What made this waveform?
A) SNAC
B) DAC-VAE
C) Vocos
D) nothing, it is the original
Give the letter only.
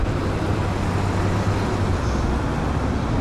D